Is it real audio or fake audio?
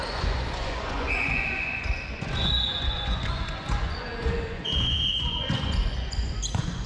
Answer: fake